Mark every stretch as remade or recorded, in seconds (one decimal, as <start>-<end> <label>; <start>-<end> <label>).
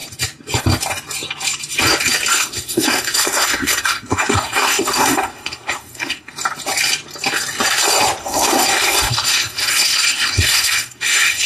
0.0-2.3 recorded; 2.3-6.3 remade; 6.3-8.2 recorded; 8.2-11.5 remade